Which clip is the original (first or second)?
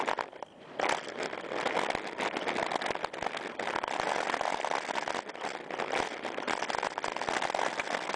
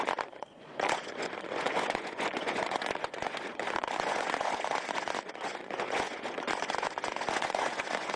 first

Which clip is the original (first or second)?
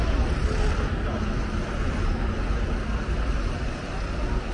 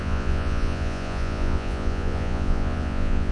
first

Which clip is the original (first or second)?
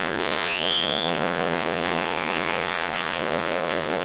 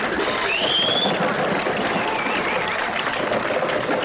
second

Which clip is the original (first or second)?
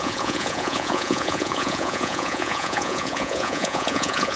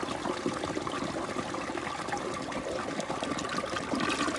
second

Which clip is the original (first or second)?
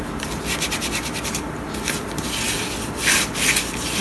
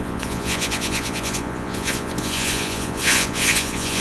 first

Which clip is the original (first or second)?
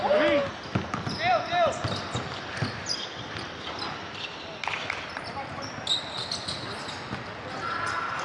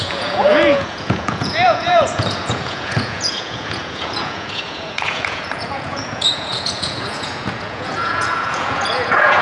first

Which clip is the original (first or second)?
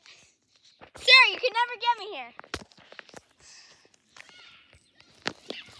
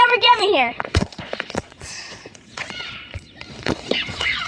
first